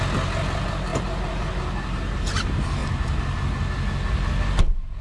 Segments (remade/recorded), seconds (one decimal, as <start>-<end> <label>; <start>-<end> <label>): 0.0-2.8 recorded; 2.8-3.5 remade; 3.5-5.0 recorded